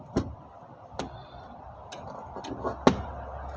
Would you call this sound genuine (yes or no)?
yes